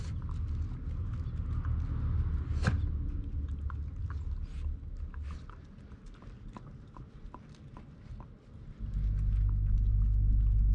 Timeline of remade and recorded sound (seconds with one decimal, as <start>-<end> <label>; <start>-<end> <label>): 0.0-10.7 recorded

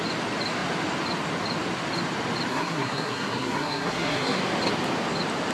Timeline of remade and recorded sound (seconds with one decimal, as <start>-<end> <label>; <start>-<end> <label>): 0.0-2.5 recorded; 2.5-4.4 remade; 4.4-5.5 recorded